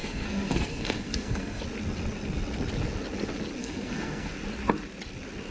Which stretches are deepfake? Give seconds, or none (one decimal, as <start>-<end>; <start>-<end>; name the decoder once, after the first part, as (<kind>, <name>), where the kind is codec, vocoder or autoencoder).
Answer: 0.0-1.6 (codec, SNAC); 3.6-4.3

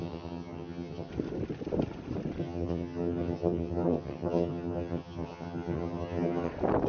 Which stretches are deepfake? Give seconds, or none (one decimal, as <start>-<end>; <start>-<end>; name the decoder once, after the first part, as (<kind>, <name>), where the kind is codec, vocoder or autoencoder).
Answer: 0.0-1.1 (vocoder, HiFi-GAN); 2.4-6.5